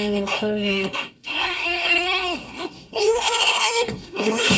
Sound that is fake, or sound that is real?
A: fake